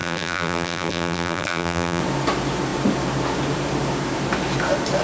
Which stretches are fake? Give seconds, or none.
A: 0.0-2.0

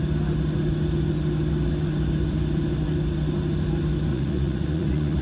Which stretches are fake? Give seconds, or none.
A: 4.1-5.2

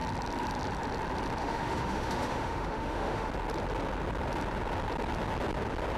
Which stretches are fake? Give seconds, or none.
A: 1.4-3.3

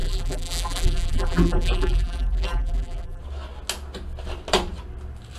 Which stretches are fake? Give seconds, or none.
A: 0.0-3.2

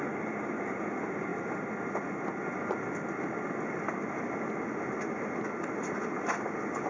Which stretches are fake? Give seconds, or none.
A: none

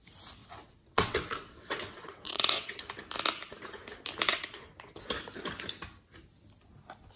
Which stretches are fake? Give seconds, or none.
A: 0.4-2.8; 4.3-4.9

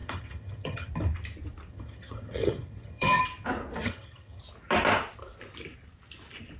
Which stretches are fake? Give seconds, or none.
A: 0.0-0.9; 1.7-3.2; 3.8-4.4

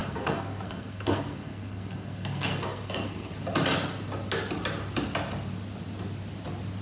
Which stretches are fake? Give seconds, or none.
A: 0.0-3.3